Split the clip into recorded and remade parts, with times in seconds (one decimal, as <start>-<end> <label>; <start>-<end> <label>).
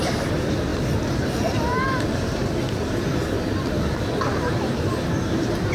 0.0-0.7 recorded; 0.7-2.5 remade; 2.5-4.3 recorded; 4.3-5.7 remade